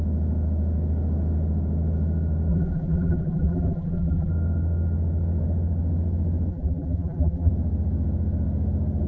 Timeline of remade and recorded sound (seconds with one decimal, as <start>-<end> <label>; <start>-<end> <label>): 0.0-2.5 recorded; 2.5-4.3 remade; 4.3-6.5 recorded; 6.5-7.5 remade; 7.5-9.1 recorded